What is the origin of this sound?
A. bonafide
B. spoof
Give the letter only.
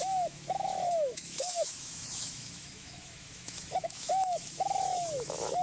B